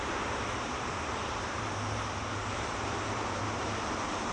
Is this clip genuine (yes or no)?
no